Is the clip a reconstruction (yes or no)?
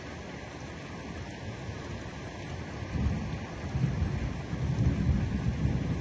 no